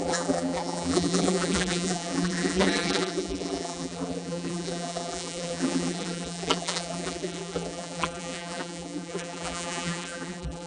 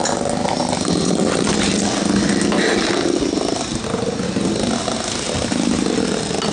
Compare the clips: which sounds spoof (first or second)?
first